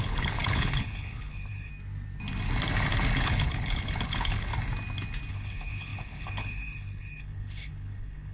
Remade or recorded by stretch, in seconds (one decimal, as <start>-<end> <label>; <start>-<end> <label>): 0.0-1.7 remade; 1.7-3.2 recorded; 3.2-4.5 remade; 4.5-5.3 recorded; 5.3-8.3 remade